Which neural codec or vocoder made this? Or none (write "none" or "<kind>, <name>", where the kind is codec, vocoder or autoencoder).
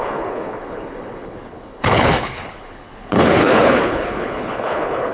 codec, HILCodec